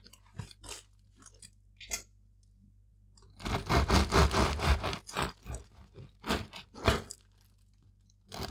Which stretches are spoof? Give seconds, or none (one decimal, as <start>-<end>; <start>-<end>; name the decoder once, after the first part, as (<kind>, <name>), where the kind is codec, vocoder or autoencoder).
none